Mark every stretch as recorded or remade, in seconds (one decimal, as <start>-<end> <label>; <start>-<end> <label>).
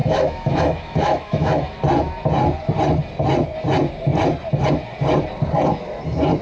0.0-1.8 remade; 1.8-6.4 recorded